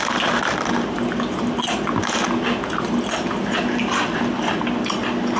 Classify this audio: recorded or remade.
recorded